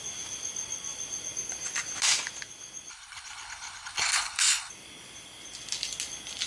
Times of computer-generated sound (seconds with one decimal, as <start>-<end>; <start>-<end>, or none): 2.9-4.7